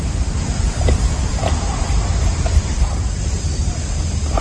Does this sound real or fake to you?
fake